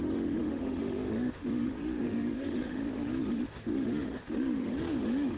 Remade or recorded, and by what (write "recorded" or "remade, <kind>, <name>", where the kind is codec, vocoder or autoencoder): remade, autoencoder, DAC-VAE